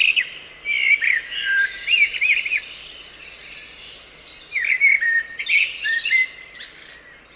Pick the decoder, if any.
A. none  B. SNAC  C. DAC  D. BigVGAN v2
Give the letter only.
A